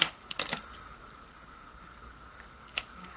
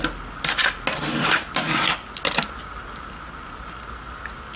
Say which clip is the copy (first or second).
first